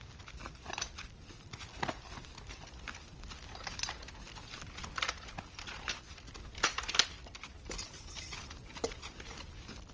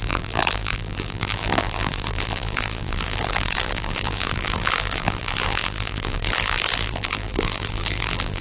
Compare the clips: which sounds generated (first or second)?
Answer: second